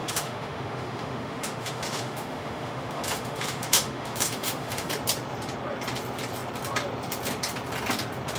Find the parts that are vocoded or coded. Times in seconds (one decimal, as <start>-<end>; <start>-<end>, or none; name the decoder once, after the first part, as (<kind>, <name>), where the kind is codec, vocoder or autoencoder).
0.0-4.9 (autoencoder, DAC-VAE)